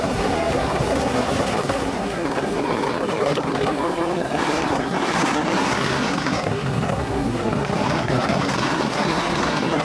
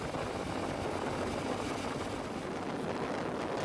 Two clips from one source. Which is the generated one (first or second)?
first